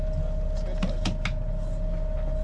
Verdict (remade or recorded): recorded